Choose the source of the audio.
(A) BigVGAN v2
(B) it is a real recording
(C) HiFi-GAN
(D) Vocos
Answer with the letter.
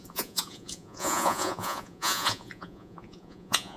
D